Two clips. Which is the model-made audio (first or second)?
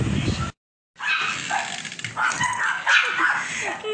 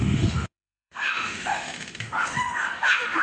second